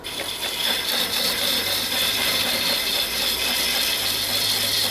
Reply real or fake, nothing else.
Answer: fake